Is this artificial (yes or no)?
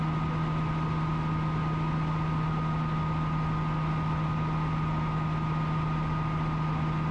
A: no